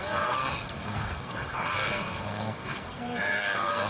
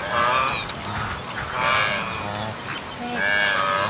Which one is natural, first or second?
second